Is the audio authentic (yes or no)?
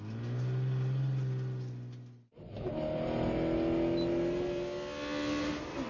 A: yes